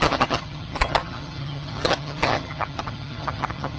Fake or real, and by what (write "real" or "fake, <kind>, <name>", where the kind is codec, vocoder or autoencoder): fake, vocoder, HiFi-GAN